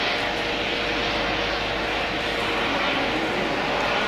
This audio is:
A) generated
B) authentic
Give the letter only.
B